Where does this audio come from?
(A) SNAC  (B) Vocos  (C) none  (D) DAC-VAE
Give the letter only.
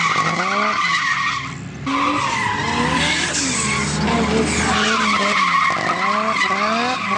C